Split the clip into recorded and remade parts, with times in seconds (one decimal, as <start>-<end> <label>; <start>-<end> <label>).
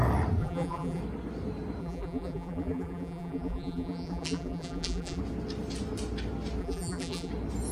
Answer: 0.0-0.4 recorded; 0.4-1.0 remade; 1.0-1.8 recorded; 1.8-5.2 remade; 5.2-6.6 recorded; 6.6-7.3 remade; 7.3-7.7 recorded